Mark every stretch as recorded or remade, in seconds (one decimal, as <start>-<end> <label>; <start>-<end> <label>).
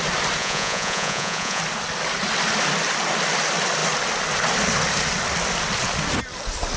0.0-0.4 recorded; 0.4-1.6 remade; 1.6-6.8 recorded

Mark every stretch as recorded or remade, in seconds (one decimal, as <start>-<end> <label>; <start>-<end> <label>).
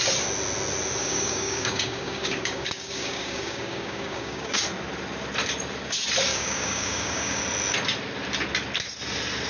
0.0-1.0 recorded; 1.0-4.6 remade; 4.6-6.3 recorded; 6.3-7.4 remade; 7.4-9.5 recorded